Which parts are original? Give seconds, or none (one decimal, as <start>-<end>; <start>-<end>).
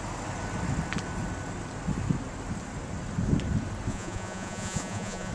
0.0-3.9